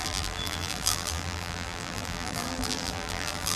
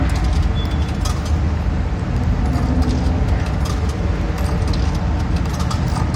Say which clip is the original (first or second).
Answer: second